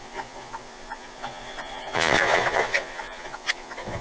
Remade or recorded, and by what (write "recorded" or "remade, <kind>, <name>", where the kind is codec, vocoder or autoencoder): remade, vocoder, Vocos